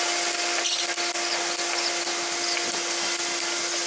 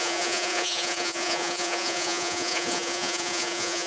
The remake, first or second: second